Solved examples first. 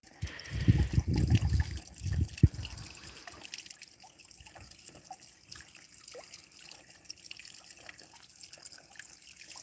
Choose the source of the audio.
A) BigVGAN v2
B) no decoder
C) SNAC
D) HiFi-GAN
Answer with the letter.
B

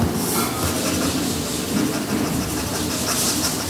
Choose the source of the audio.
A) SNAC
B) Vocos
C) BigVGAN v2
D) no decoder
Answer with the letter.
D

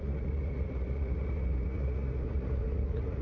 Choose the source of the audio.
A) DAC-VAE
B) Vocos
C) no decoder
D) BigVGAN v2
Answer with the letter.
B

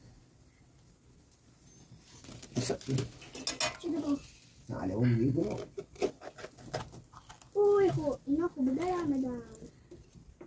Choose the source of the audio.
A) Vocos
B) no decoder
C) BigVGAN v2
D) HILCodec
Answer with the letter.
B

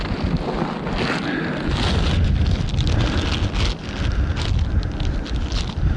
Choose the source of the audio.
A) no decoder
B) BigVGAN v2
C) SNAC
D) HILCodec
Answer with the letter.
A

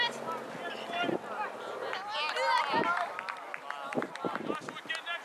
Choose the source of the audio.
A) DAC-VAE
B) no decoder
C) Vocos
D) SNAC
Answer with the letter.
B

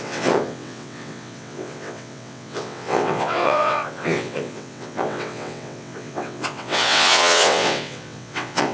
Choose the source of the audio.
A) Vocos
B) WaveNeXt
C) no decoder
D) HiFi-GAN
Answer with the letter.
B